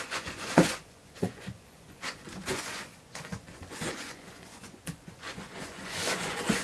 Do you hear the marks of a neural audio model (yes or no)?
yes